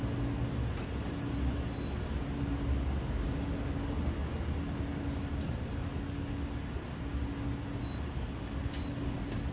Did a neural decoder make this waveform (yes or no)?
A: no